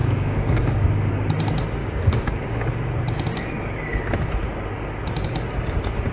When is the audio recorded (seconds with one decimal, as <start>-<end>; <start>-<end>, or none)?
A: 1.1-1.8; 2.7-6.1